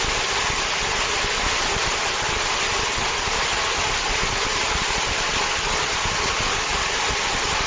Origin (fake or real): real